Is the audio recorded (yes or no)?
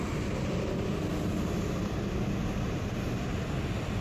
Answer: yes